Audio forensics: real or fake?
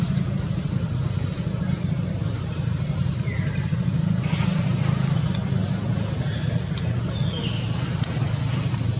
real